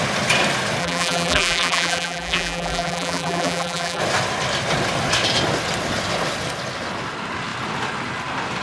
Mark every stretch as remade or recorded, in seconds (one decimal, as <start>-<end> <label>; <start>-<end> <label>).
0.0-0.8 recorded; 0.8-4.0 remade; 4.0-8.6 recorded